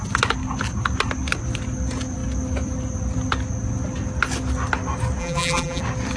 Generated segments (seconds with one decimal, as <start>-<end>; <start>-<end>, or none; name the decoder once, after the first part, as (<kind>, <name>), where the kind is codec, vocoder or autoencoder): 5.2-5.8 (vocoder, BigVGAN v2)